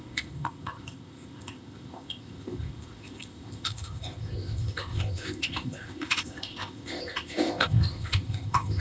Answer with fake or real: fake